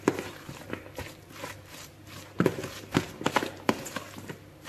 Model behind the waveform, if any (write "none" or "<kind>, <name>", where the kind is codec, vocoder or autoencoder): vocoder, BigVGAN v2